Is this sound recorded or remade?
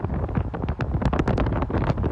recorded